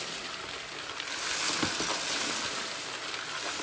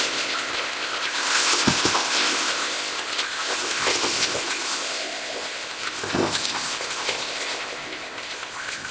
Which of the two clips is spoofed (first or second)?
second